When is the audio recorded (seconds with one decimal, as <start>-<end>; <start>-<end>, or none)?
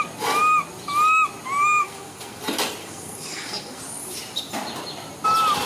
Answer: 0.0-1.8; 2.4-2.8; 3.8-5.7